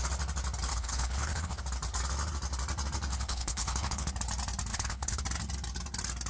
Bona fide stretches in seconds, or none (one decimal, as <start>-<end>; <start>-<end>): 0.0-0.7; 1.6-3.1; 4.1-4.7; 5.2-6.3